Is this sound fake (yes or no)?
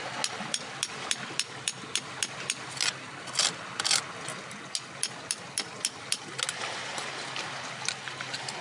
no